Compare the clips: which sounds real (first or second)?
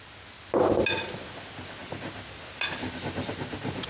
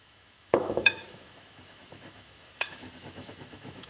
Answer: first